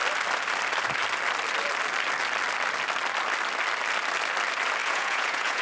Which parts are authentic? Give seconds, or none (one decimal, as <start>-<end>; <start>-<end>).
0.0-4.8